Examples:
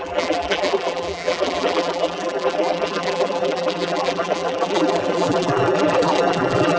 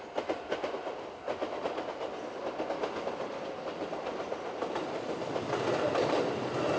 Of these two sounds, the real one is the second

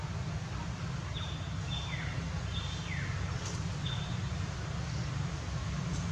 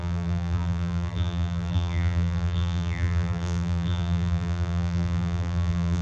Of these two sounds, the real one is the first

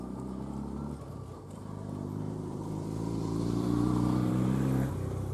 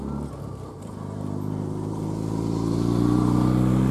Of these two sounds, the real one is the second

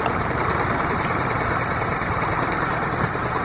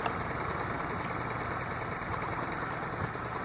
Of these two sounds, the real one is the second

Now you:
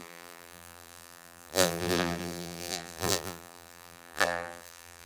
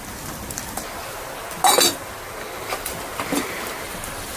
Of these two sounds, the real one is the second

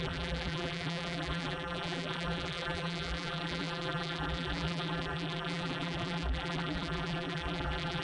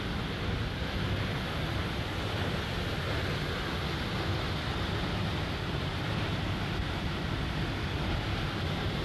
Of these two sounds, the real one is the second